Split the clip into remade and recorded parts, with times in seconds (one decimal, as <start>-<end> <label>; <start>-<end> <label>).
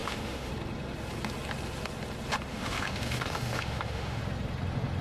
0.0-0.5 remade; 0.5-2.5 recorded; 2.5-4.2 remade; 4.2-5.0 recorded